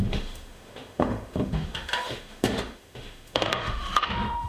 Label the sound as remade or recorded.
remade